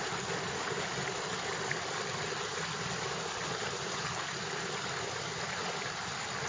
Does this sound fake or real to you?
real